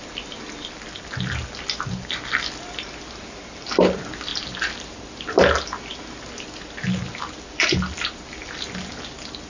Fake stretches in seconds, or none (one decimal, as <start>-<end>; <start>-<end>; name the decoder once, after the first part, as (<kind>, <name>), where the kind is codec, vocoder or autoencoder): none